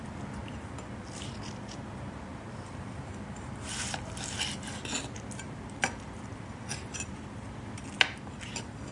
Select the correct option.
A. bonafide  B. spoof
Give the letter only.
A